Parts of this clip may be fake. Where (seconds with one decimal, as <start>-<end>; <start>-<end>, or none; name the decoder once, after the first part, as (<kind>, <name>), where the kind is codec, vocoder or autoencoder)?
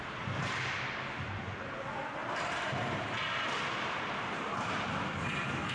2.2-5.7 (vocoder, BigVGAN v2)